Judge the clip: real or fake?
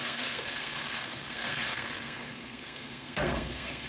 fake